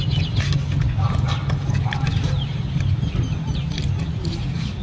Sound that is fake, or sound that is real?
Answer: real